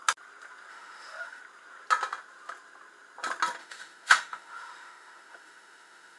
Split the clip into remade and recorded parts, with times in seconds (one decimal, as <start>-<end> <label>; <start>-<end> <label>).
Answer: 0.0-0.7 recorded; 0.7-1.4 remade; 1.4-3.6 recorded; 3.6-6.2 remade

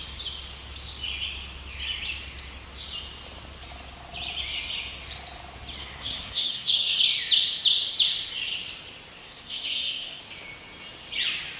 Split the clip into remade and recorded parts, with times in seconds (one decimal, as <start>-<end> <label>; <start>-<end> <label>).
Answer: 0.0-5.8 recorded; 5.8-7.0 remade; 7.0-9.2 recorded; 9.2-10.2 remade; 10.2-11.6 recorded

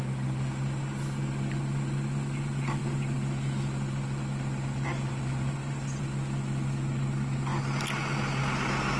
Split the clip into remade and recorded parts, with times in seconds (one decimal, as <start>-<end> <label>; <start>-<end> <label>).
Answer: 0.0-9.0 recorded

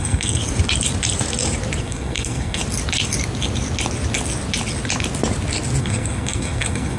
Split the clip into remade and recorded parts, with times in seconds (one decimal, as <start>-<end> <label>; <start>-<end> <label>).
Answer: 0.0-0.4 remade; 0.4-1.8 recorded; 1.8-2.6 remade; 2.6-5.8 recorded; 5.8-7.0 remade

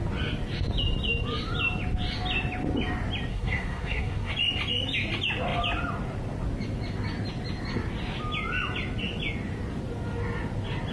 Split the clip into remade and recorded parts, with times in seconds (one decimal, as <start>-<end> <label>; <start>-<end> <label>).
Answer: 0.0-3.3 recorded; 3.3-4.3 remade; 4.3-10.9 recorded

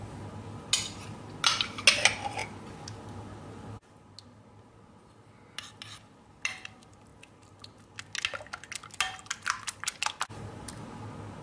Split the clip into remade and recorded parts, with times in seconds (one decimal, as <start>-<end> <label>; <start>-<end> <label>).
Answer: 0.0-11.4 recorded

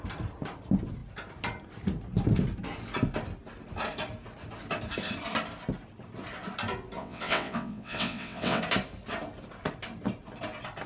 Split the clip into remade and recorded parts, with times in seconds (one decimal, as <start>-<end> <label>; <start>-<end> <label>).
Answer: 0.0-7.0 recorded; 7.0-8.6 remade; 8.6-10.9 recorded